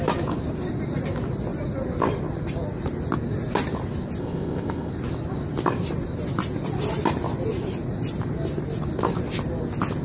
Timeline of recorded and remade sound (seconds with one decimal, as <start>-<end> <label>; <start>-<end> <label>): 0.0-4.2 recorded; 4.2-4.9 remade; 4.9-10.0 recorded